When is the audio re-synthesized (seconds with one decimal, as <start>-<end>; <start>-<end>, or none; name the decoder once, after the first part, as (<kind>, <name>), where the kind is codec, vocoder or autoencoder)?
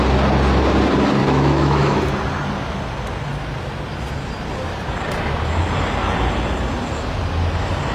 1.2-2.0 (autoencoder, DAC-VAE)